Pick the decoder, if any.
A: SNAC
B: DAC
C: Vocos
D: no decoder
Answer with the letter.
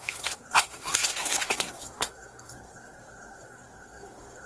A